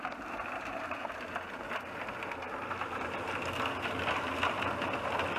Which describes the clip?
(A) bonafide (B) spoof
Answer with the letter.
A